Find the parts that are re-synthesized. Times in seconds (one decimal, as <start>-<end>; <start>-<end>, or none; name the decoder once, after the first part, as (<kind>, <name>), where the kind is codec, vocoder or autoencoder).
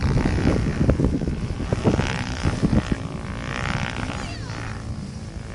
none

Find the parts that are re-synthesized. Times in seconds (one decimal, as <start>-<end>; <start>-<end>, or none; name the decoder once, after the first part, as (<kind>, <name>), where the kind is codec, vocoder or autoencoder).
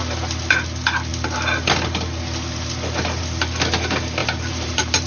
4.2-5.1 (vocoder, BigVGAN v2)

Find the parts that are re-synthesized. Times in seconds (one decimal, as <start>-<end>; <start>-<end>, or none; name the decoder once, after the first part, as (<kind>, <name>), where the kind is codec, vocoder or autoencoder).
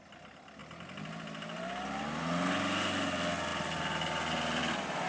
none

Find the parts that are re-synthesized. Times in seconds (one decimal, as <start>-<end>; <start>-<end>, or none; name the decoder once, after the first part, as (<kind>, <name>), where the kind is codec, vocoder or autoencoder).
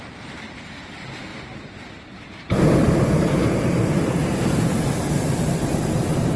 0.0-6.4 (vocoder, BigVGAN v2)